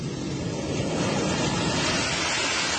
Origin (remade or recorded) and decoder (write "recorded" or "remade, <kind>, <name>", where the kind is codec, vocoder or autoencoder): recorded